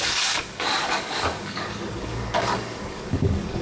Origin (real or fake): fake